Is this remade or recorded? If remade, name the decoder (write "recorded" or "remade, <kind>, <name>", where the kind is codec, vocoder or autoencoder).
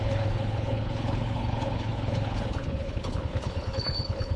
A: remade, codec, HILCodec